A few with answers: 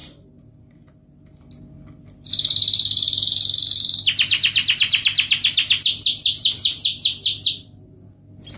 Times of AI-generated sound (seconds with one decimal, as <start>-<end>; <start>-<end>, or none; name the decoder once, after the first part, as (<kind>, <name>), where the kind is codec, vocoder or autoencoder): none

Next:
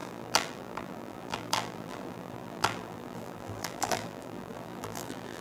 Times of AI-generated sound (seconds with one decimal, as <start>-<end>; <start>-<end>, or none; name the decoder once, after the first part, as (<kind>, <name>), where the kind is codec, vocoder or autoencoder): 0.0-5.4 (vocoder, BigVGAN v2)

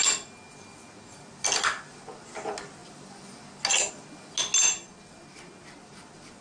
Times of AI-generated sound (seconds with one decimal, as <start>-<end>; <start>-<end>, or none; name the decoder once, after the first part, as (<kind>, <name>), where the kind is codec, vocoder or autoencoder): none

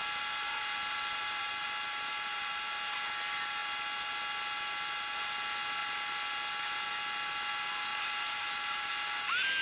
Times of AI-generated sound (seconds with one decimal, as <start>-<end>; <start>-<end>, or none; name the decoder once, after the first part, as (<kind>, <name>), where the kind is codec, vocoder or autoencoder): 0.0-2.9 (vocoder, BigVGAN v2); 7.9-8.9